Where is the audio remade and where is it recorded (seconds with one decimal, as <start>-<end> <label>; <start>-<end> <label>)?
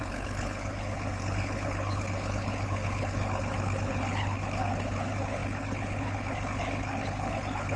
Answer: 0.0-7.8 remade